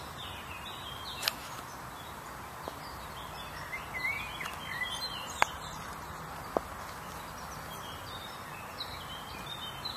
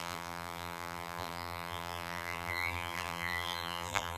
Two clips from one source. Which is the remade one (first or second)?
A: second